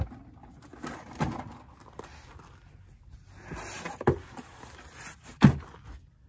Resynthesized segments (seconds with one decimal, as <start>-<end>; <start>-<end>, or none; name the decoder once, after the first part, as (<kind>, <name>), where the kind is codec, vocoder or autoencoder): none